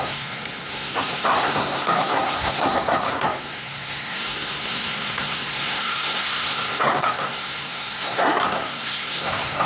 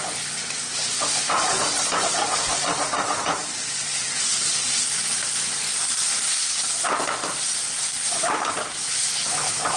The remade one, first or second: first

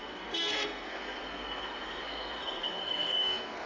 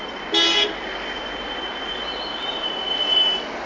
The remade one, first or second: first